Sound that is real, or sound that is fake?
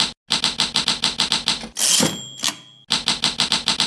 real